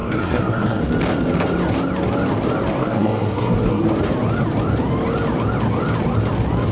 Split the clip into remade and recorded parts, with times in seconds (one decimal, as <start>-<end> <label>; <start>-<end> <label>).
0.0-0.8 remade; 0.8-2.8 recorded; 2.8-3.8 remade; 3.8-6.7 recorded